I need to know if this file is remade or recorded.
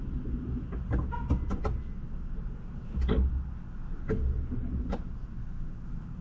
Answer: recorded